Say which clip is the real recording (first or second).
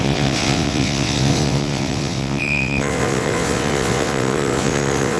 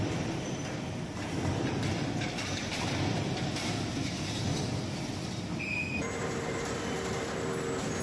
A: second